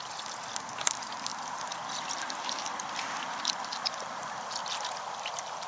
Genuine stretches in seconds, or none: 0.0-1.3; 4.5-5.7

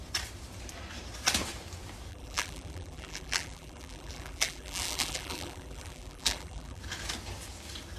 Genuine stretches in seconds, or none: 0.0-2.1; 6.8-8.0

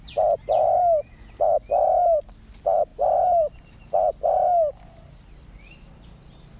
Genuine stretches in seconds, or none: 0.0-6.6

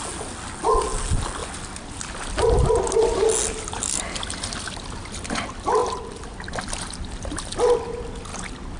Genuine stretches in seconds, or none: 0.0-8.8

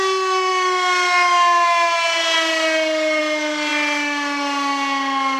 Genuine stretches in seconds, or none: 0.0-5.4

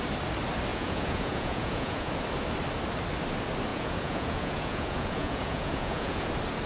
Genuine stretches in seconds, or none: 0.0-0.7; 2.1-3.7; 6.3-6.7

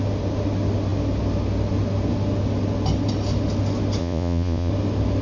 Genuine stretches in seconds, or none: 0.0-4.0; 4.7-5.2

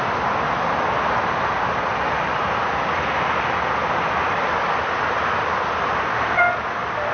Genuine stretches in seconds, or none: 0.0-7.1